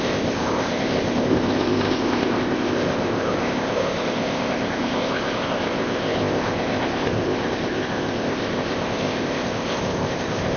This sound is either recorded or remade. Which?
remade